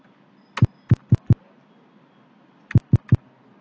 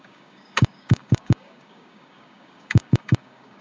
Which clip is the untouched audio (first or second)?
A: first